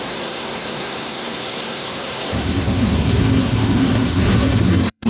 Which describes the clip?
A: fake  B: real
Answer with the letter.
A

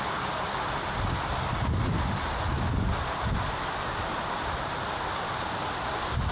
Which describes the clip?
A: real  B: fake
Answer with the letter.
A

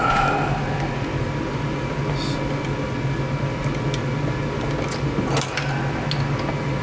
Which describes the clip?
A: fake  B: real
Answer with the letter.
B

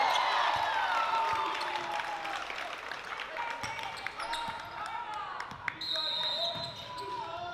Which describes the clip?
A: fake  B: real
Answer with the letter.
B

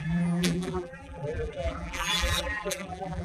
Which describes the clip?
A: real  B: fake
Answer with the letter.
B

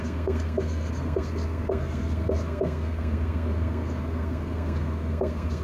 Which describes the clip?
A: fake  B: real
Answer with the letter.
A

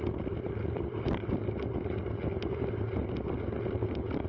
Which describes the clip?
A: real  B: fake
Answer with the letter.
A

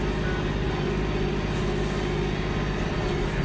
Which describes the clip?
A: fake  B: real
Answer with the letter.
B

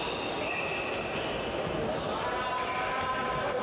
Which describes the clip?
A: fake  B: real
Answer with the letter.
B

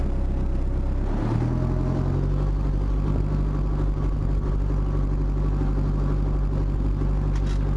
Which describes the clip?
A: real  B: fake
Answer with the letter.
A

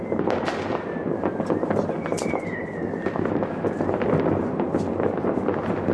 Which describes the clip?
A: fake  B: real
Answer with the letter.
B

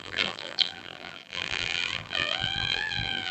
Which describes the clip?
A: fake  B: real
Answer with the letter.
A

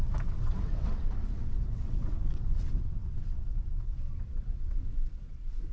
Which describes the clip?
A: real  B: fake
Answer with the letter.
B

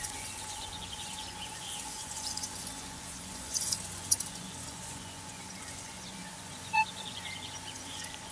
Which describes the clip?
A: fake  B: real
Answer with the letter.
A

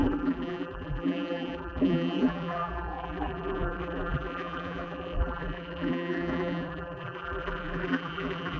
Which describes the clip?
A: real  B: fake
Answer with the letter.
B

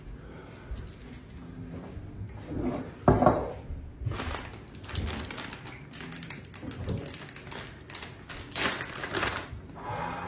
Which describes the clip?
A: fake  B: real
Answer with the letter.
B